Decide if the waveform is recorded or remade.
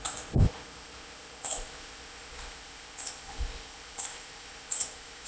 remade